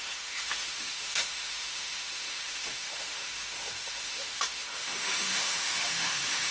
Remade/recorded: remade